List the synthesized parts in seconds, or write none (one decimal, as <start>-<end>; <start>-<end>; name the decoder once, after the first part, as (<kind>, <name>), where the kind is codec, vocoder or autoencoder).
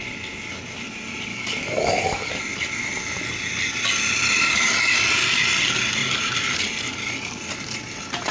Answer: 1.3-2.3 (codec, DAC)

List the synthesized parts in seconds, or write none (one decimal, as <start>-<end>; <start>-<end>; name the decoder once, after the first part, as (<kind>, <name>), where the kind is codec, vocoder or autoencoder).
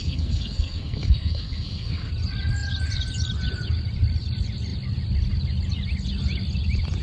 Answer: 0.0-2.1 (codec, SNAC)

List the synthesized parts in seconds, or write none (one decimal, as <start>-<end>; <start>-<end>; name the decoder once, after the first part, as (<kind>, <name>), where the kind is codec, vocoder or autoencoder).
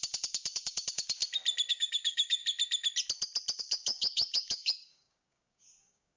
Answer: 0.0-1.2 (codec, DAC); 1.7-2.4; 3.6-6.2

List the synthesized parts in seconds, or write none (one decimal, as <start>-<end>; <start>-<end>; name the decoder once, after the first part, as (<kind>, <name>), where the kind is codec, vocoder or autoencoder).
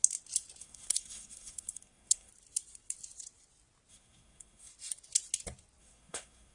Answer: 0.6-2.3 (codec, SNAC); 3.9-4.7; 5.8-6.5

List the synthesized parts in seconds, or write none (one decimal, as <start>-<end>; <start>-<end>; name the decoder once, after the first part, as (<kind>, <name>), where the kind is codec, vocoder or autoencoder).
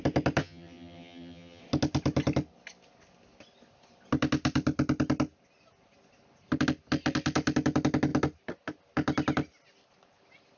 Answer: 0.4-1.6 (vocoder, HiFi-GAN)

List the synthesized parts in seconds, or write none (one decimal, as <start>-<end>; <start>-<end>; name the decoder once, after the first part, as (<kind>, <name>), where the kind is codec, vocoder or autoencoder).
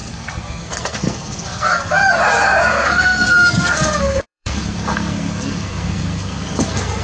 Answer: 0.0-2.0 (codec, SNAC); 2.7-7.0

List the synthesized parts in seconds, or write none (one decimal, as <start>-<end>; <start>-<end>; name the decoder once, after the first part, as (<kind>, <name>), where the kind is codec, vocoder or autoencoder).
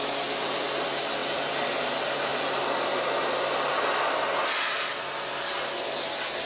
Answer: none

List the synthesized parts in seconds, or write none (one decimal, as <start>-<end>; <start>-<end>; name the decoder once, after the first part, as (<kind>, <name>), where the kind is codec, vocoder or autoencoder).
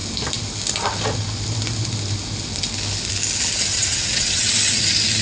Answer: 3.7-4.8 (vocoder, WaveNeXt)